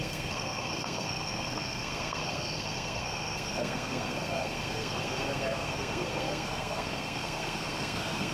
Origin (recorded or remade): remade